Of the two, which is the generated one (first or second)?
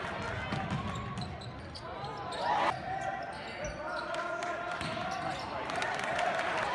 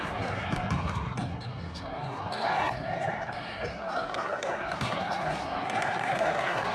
second